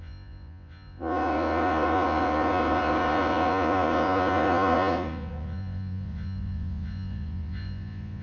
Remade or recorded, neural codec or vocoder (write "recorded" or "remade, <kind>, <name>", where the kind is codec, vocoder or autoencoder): remade, vocoder, Vocos